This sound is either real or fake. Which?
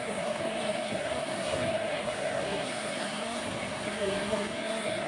fake